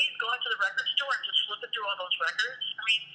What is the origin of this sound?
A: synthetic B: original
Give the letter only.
B